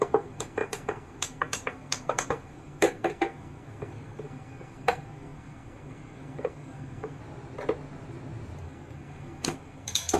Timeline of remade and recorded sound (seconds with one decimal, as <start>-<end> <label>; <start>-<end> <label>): 0.0-7.2 remade; 7.2-8.6 recorded; 8.6-10.2 remade